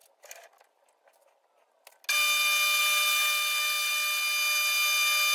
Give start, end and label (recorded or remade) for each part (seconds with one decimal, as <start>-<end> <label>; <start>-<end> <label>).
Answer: 0.0-5.3 recorded